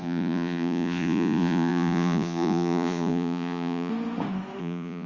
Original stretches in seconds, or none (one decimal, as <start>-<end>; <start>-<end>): 3.9-4.6